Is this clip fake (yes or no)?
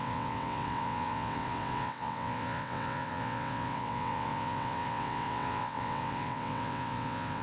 yes